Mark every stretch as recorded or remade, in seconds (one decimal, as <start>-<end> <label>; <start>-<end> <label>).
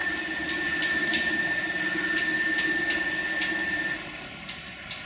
0.0-1.8 remade; 1.8-5.1 recorded